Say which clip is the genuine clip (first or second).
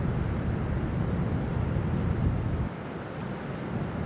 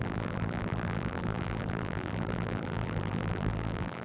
first